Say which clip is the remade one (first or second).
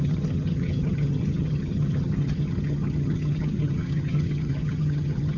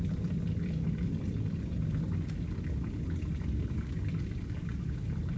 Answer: first